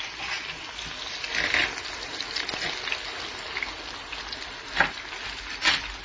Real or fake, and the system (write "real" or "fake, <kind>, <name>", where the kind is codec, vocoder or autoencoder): real